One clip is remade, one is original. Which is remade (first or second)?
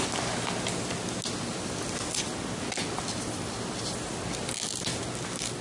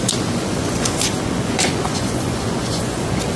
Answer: second